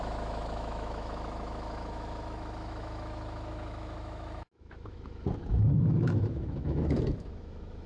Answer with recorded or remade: remade